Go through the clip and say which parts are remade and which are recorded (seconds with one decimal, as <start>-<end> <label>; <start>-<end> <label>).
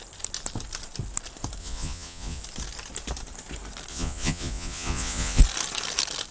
0.0-1.6 recorded; 1.6-2.4 remade; 2.4-3.9 recorded; 3.9-5.4 remade; 5.4-6.3 recorded